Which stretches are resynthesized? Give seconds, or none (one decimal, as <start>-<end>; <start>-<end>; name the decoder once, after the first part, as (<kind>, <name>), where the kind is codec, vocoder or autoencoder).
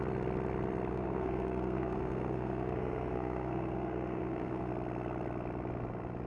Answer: 0.9-4.7 (codec, SNAC)